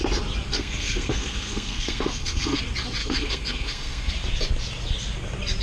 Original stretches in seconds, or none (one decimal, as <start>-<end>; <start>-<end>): 0.0-0.5; 2.6-3.0; 4.1-5.6